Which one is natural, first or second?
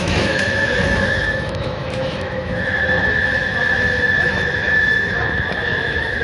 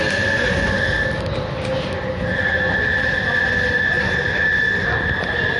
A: second